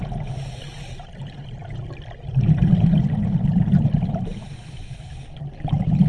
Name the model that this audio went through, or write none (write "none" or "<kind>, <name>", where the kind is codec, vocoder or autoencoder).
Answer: none